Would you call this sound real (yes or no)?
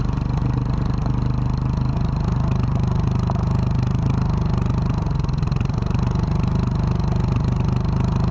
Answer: no